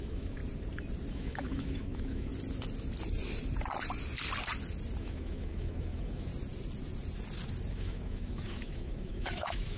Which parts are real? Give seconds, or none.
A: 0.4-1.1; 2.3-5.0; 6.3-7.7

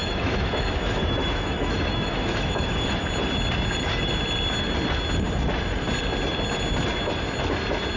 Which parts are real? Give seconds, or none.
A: 3.0-8.0

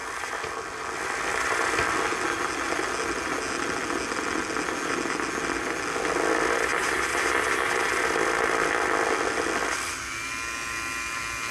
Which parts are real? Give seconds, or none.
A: 0.0-11.5